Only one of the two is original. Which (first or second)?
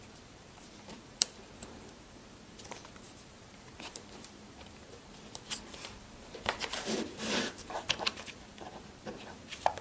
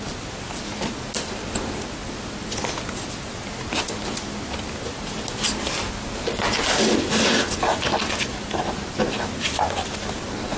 second